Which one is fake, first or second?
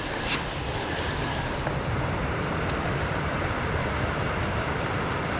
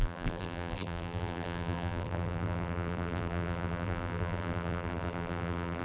second